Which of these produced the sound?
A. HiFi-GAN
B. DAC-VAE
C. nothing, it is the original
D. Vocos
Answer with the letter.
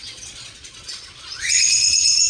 D